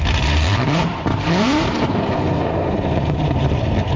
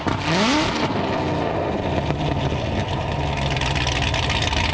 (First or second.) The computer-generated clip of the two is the first